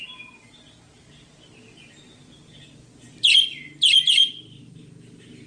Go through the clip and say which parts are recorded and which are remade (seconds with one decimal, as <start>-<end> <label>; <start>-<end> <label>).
0.0-4.2 recorded; 4.2-4.8 remade; 4.8-5.5 recorded